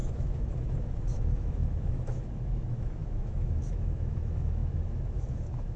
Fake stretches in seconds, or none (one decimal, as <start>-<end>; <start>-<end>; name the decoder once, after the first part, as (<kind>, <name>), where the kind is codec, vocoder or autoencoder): 0.0-5.8 (autoencoder, DAC-VAE)